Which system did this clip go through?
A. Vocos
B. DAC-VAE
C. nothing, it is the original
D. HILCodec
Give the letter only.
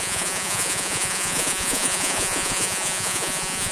A